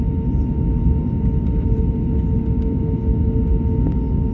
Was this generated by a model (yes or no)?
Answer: no